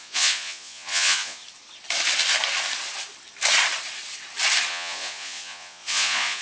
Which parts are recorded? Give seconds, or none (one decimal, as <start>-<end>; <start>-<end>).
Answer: 1.4-4.7

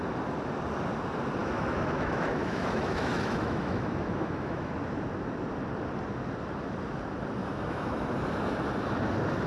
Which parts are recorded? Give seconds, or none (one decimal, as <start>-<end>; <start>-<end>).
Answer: 0.0-1.4; 4.7-7.4; 8.0-9.5

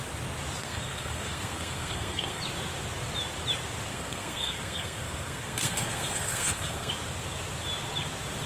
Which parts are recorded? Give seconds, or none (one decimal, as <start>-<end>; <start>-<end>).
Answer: 0.0-0.6; 2.4-3.9; 6.9-8.5

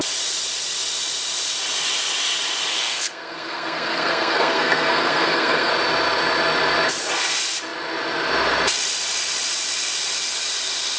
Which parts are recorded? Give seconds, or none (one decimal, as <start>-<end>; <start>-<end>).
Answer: 0.0-2.7; 5.7-11.0

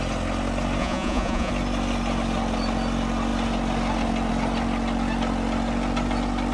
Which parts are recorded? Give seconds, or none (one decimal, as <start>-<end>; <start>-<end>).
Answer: 0.0-0.8; 1.5-6.5

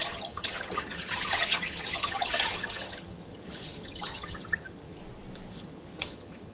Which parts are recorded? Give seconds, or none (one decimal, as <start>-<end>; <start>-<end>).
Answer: 5.0-5.5

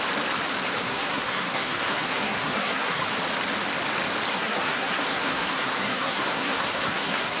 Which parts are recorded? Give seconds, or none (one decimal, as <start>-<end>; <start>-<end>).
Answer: 0.0-0.8; 3.0-4.3

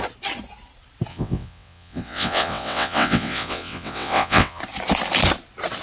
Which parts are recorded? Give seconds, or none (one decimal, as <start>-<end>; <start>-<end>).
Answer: 0.0-1.1; 4.6-5.8